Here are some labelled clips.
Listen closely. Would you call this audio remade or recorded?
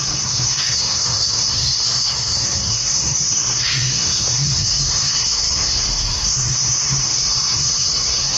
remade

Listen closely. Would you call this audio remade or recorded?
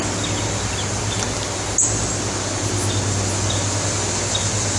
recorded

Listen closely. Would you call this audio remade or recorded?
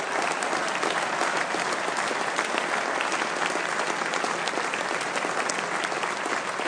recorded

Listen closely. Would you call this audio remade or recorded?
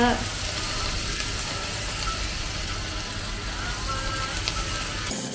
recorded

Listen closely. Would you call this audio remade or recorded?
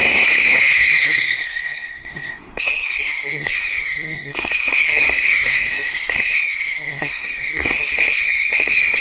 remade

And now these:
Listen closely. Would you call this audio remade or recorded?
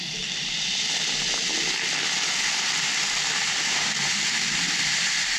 recorded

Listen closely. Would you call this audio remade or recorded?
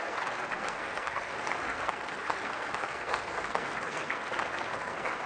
remade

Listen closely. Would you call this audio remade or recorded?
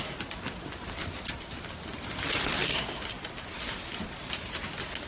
recorded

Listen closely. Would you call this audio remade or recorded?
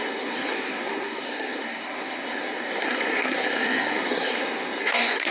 remade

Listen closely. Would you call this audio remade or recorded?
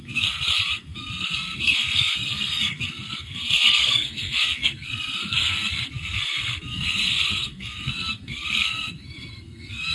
remade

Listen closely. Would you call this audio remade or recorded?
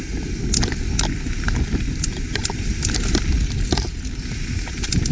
recorded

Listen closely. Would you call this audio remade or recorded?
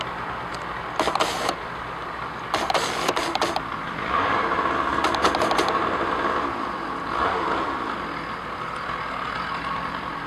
recorded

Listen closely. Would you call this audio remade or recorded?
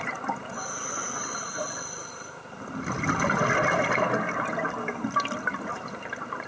recorded